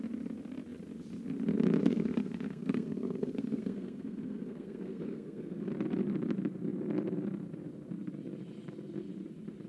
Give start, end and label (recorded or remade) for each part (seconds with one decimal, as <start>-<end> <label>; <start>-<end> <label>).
0.0-1.8 recorded; 1.8-5.7 remade; 5.7-9.7 recorded